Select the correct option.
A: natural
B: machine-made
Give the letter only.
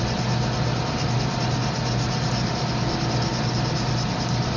A